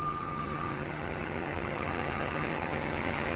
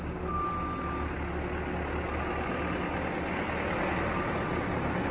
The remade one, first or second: first